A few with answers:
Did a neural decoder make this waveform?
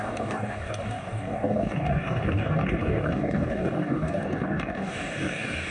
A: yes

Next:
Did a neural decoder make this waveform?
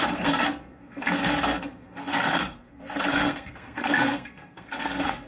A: yes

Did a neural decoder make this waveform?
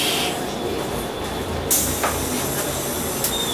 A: no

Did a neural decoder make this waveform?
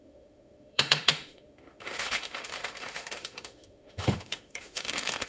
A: yes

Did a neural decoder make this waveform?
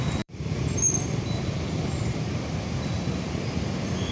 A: yes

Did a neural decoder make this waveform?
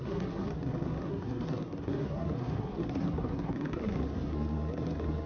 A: yes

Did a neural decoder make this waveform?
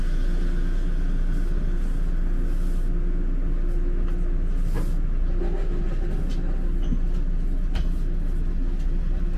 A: no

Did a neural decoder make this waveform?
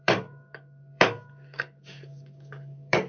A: yes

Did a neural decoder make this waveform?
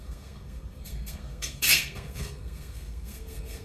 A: yes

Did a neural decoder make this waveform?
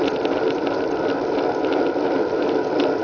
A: no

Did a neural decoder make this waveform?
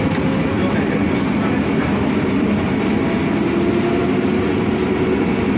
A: no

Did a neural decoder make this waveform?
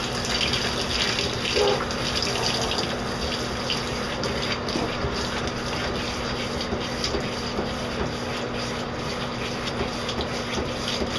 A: no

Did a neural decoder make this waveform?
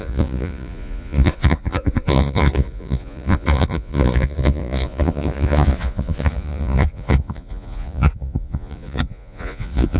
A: yes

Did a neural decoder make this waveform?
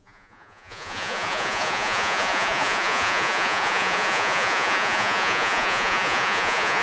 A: yes